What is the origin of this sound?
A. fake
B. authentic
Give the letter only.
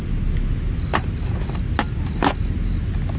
B